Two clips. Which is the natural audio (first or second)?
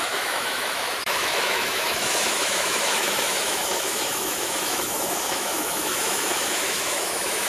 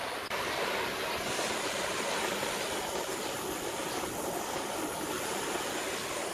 second